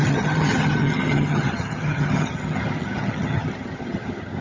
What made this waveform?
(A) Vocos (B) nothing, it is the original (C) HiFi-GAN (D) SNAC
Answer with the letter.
C